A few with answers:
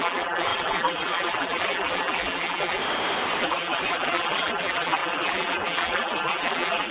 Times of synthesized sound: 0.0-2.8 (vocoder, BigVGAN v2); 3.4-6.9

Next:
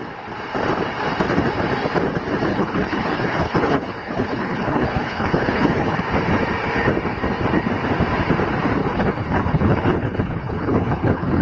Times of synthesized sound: 2.5-6.0 (codec, HILCodec); 8.8-11.4

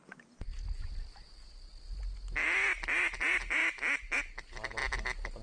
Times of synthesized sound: none